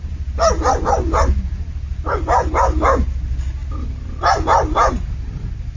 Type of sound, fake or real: real